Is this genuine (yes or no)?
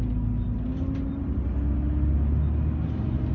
yes